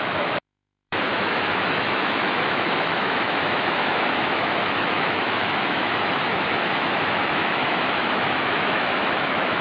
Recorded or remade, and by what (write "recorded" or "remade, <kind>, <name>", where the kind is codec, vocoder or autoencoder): remade, autoencoder, DAC-VAE